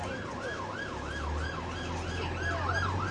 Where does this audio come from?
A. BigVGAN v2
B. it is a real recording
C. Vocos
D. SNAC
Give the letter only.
B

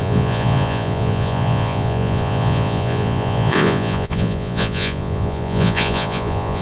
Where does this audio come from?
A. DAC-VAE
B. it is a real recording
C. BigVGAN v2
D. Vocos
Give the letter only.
D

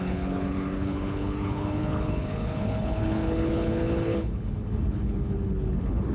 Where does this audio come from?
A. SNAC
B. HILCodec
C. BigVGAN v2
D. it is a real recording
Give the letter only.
B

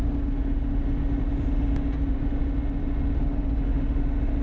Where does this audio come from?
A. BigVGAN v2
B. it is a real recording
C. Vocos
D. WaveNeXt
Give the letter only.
B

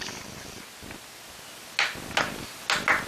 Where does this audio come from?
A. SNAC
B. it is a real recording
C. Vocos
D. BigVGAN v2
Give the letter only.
B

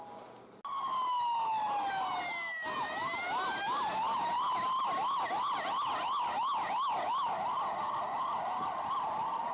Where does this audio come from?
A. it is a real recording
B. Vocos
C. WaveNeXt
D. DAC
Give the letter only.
A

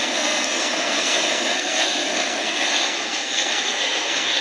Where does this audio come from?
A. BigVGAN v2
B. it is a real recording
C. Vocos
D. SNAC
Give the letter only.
D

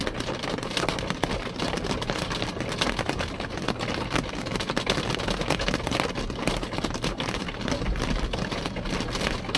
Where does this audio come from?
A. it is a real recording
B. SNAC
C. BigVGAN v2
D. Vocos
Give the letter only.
A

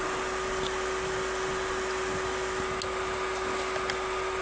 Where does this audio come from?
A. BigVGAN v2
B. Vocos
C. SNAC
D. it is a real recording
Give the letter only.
D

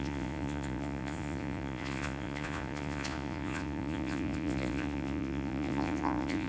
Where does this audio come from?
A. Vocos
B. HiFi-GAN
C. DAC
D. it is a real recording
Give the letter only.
A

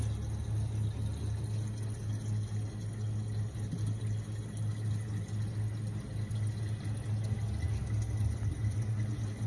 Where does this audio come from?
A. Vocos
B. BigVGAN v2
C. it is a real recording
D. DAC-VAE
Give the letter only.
C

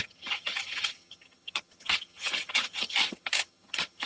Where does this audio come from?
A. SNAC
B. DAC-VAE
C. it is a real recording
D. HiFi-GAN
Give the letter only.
D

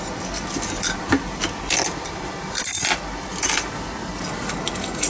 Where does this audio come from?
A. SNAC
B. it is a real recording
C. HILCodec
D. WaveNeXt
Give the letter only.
B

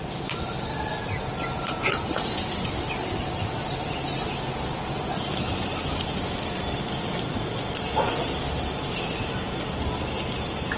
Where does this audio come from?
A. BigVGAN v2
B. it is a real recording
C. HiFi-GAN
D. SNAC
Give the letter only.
B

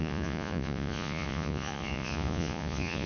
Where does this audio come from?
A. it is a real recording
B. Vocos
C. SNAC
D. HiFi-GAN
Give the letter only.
B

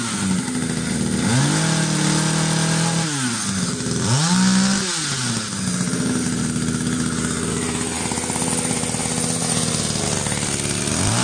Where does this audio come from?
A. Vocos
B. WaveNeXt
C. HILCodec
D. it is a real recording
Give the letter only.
D